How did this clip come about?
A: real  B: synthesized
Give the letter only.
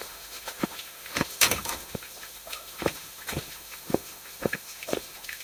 B